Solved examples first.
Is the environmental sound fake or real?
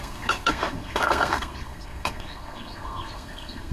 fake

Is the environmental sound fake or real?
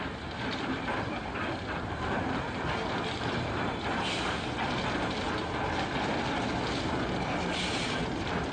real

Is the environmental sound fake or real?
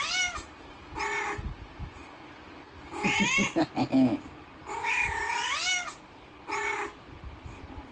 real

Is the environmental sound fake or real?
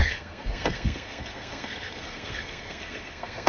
fake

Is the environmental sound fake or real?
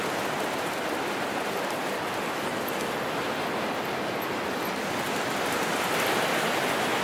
real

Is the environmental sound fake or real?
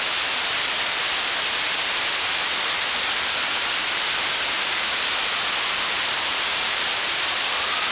real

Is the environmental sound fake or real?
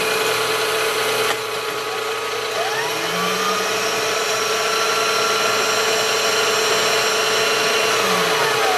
real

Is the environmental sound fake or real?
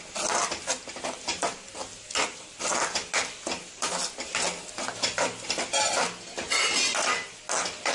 real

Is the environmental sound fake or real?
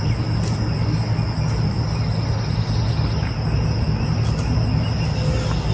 real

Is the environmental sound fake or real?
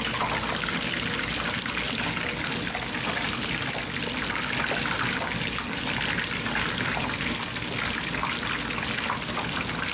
real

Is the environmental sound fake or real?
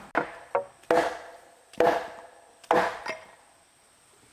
real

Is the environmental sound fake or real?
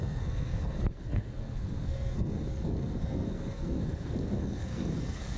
fake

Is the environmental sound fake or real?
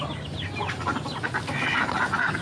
real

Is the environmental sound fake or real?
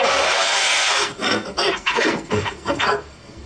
fake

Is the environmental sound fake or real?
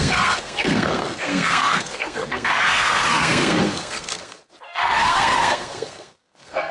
fake